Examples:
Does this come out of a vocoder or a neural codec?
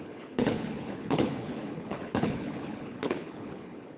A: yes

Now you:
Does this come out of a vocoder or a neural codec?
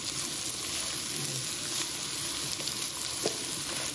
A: no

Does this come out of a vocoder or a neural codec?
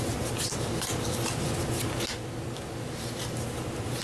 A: no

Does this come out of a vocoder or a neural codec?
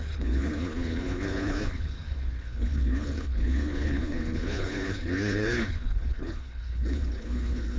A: yes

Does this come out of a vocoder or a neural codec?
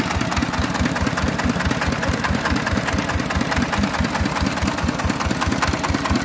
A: no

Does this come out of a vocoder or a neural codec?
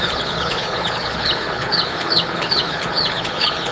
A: yes